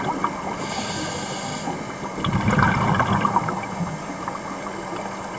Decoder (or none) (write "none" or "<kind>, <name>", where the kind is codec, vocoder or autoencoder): none